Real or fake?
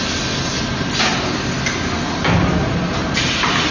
real